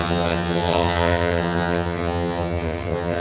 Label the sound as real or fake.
fake